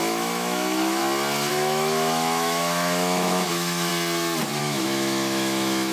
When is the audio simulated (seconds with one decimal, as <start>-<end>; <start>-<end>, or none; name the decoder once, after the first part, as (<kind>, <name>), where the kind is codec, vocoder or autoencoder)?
0.0-1.0 (autoencoder, DAC-VAE); 1.5-3.9; 4.6-5.9